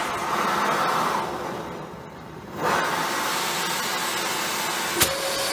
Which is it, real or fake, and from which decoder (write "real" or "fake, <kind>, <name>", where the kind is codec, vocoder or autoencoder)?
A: real